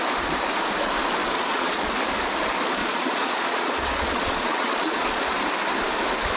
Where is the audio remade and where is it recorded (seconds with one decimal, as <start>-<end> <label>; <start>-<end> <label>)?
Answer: 0.0-1.2 recorded; 1.2-1.9 remade; 1.9-2.8 recorded; 2.8-5.2 remade; 5.2-6.4 recorded